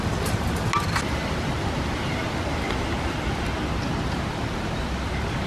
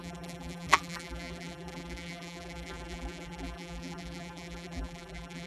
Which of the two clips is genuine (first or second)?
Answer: first